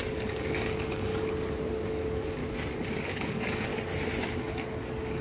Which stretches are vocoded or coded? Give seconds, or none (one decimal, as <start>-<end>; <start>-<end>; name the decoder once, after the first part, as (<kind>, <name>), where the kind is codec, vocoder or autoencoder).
0.0-1.1 (codec, DAC); 1.9-2.4; 2.9-3.7; 4.4-5.2